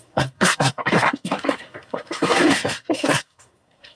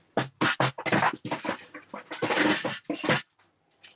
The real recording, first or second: second